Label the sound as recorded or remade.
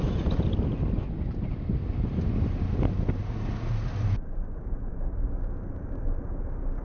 recorded